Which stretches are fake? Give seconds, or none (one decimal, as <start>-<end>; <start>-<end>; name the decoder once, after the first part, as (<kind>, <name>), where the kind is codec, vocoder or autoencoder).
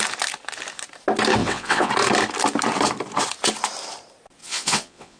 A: 1.4-1.9 (vocoder, WaveNeXt); 4.4-5.2